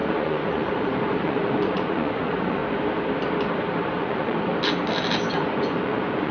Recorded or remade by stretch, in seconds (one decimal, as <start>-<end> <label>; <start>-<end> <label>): 0.0-2.6 remade; 2.6-3.9 recorded; 3.9-4.5 remade; 4.5-5.4 recorded; 5.4-6.3 remade